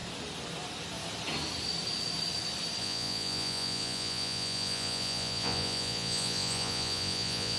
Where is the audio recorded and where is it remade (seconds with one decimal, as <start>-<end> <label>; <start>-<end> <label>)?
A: 0.0-2.8 recorded; 2.8-7.6 remade

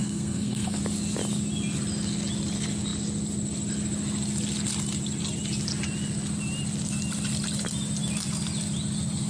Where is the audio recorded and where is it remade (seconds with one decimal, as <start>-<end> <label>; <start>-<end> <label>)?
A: 0.0-0.8 remade; 0.8-9.3 recorded

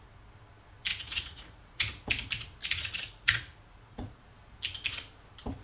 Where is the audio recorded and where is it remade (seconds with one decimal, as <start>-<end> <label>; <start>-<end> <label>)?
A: 0.0-0.9 recorded; 0.9-2.1 remade; 2.1-2.6 recorded; 2.6-4.2 remade; 4.2-5.6 recorded

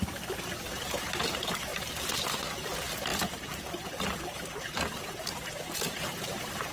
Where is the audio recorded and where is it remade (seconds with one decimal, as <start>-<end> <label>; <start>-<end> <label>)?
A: 0.0-1.7 recorded; 1.7-2.5 remade; 2.5-6.7 recorded